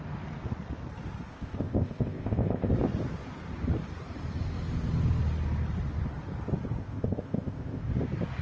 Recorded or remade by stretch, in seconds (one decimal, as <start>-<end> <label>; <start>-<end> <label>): 0.0-1.3 recorded; 1.3-2.7 remade; 2.7-6.8 recorded; 6.8-7.9 remade; 7.9-8.4 recorded